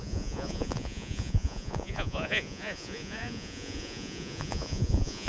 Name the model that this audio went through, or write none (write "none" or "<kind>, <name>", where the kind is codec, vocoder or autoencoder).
vocoder, Vocos